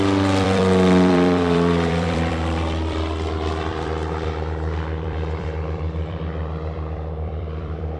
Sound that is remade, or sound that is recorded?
remade